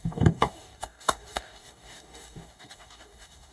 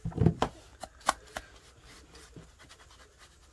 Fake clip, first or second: first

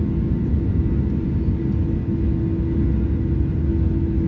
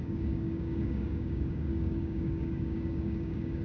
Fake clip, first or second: second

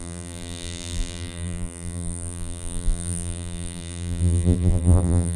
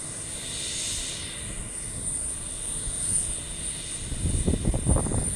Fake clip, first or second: first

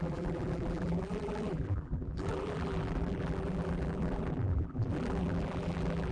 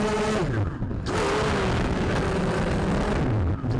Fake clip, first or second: first